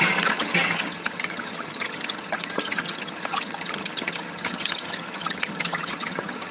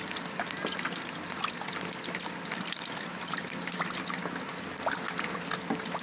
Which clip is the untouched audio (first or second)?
second